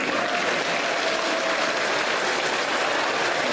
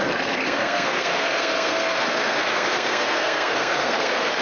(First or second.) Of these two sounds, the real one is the first